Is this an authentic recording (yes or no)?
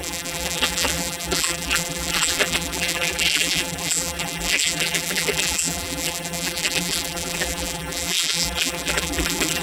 no